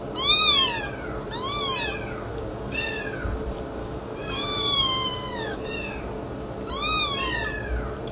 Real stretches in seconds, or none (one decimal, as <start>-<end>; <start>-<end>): 0.0-2.3; 3.0-3.8; 6.0-8.1

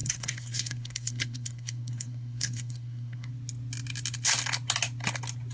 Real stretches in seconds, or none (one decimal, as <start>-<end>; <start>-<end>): 3.3-5.5

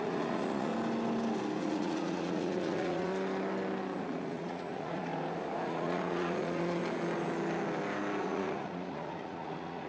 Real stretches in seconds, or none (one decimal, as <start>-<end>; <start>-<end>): 0.7-1.6; 3.1-4.0; 5.1-5.7; 6.8-8.2